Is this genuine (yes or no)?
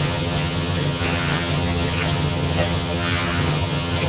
no